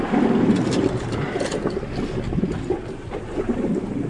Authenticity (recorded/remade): recorded